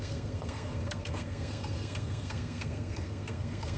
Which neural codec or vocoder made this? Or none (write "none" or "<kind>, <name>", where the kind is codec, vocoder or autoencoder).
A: codec, SNAC